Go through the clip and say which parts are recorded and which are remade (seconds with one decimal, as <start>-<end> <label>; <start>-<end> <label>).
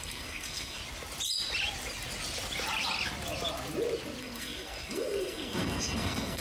0.0-0.8 remade; 0.8-4.2 recorded; 4.2-6.4 remade